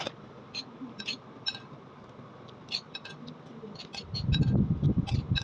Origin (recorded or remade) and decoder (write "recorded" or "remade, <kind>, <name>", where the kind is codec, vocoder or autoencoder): recorded